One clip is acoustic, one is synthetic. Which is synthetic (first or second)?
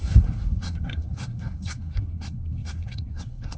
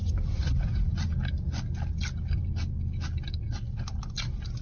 first